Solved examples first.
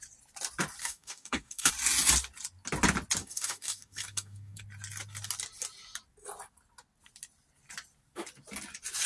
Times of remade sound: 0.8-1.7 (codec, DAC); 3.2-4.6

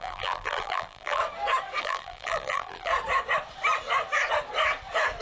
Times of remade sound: 0.0-1.2 (vocoder, BigVGAN v2); 1.8-2.9

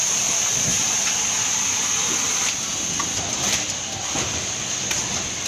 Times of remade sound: 0.0-0.5 (vocoder, BigVGAN v2); 3.0-5.5

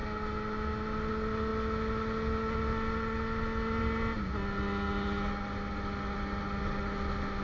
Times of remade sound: none

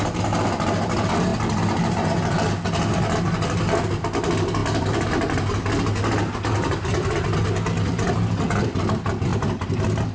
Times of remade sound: none